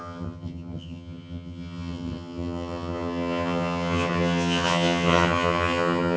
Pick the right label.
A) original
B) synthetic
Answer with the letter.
B